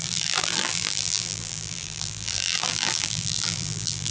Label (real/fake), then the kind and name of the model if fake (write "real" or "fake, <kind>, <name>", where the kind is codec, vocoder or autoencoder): fake, vocoder, BigVGAN v2